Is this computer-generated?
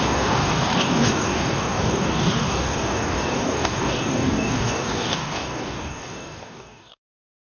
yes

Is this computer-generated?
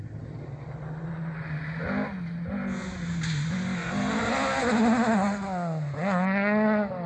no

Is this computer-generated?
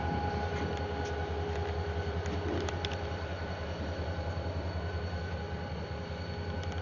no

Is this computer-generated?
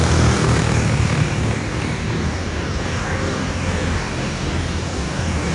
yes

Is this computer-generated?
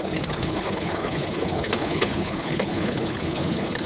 yes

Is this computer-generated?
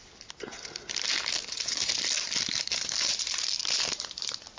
no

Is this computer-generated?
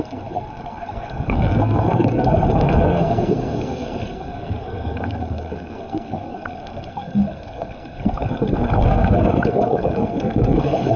yes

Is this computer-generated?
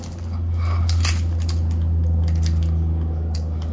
no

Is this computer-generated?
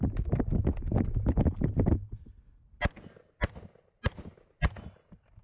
no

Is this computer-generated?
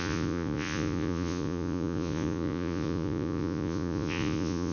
yes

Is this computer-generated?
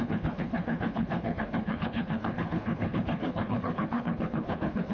yes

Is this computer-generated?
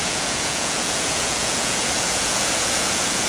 yes